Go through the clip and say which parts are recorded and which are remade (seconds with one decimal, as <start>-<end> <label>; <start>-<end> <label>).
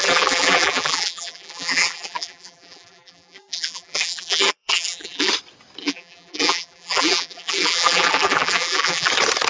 0.0-5.3 remade; 5.3-5.8 recorded; 5.8-9.1 remade; 9.1-9.5 recorded